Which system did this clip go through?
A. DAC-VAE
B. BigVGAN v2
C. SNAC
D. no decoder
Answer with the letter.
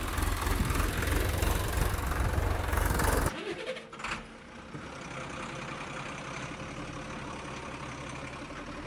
D